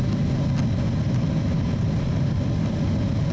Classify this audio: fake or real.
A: real